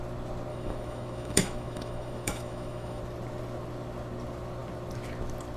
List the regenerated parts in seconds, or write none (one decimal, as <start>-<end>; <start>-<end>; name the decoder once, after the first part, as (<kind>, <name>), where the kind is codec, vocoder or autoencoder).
0.5-3.0 (autoencoder, DAC-VAE)